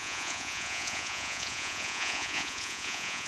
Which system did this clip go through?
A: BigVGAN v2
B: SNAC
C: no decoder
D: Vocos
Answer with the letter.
D